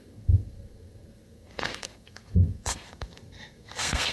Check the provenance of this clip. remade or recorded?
remade